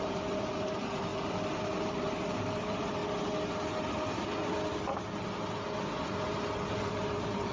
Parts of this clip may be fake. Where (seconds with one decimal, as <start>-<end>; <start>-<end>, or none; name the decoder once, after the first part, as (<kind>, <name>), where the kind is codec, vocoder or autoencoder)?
0.0-1.1 (vocoder, BigVGAN v2); 1.8-3.0; 6.7-7.5